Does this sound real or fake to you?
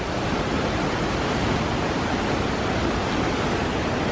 real